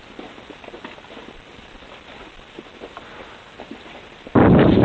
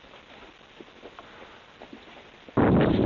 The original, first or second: second